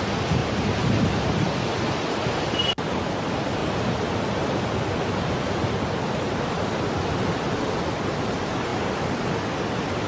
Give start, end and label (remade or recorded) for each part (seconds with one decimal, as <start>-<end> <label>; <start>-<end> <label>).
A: 0.0-0.4 recorded; 0.4-2.7 remade; 2.7-10.1 recorded